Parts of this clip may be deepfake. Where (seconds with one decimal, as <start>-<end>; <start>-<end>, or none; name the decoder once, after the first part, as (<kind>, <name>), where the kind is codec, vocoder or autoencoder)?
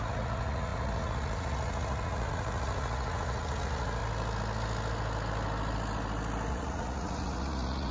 0.0-4.0 (vocoder, Vocos); 6.5-7.9